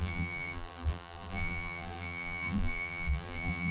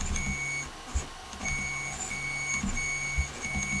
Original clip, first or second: second